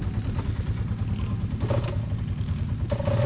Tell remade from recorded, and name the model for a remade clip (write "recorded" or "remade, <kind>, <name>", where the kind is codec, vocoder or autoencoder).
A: recorded